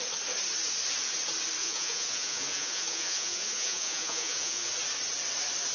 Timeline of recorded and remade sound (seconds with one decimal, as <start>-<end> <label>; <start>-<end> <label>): 0.0-1.6 recorded; 1.6-4.7 remade; 4.7-5.7 recorded